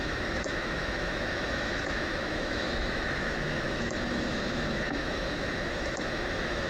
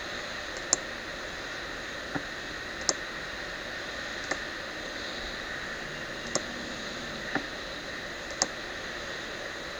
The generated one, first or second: first